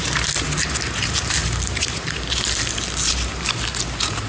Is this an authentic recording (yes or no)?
yes